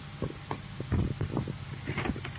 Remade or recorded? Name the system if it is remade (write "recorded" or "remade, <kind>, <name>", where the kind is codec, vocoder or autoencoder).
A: recorded